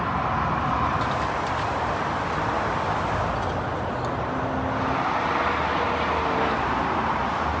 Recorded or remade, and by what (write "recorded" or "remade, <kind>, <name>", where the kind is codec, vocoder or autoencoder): recorded